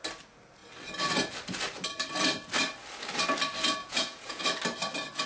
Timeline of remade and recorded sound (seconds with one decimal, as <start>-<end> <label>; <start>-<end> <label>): 0.0-3.8 recorded; 3.8-4.4 remade; 4.4-5.3 recorded